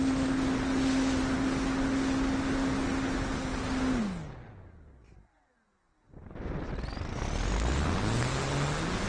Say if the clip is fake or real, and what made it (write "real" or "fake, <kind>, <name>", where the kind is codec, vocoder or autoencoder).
real